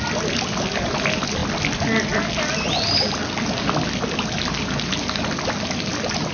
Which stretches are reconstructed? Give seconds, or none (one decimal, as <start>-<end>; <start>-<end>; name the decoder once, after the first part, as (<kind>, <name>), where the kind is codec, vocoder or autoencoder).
none